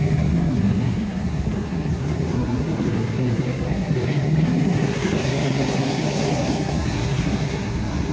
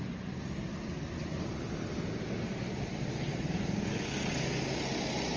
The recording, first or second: second